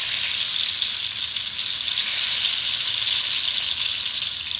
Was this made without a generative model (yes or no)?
yes